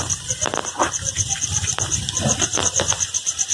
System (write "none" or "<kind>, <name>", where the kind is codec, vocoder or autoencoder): vocoder, BigVGAN v2